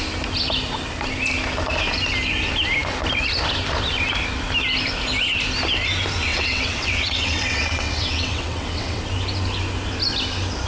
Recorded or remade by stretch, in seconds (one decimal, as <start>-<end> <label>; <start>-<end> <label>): 0.0-6.3 recorded; 6.3-9.0 remade; 9.0-10.7 recorded